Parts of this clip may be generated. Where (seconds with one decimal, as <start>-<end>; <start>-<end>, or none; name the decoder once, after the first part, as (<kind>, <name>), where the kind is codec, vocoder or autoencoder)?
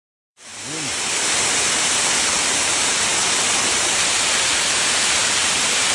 0.0-0.5 (vocoder, BigVGAN v2); 2.3-5.9